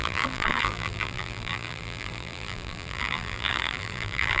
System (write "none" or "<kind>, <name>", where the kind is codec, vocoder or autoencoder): vocoder, BigVGAN v2